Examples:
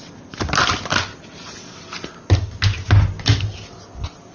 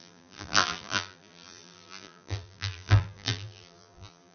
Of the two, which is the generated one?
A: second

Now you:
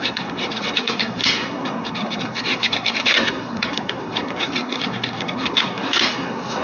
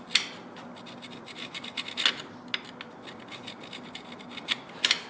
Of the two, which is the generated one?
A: first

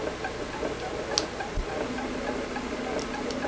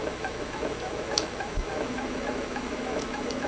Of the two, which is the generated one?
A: second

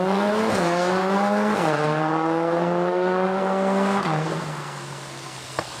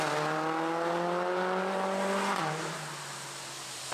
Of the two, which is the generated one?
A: first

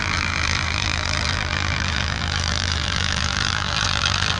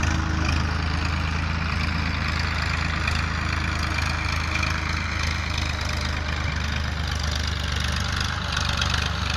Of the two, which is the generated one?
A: first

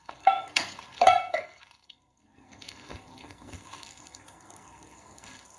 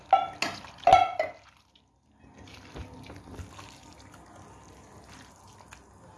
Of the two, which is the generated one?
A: first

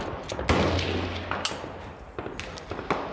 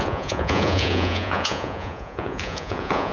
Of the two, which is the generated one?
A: second